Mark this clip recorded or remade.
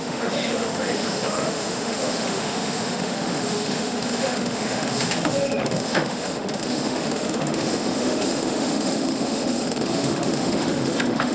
remade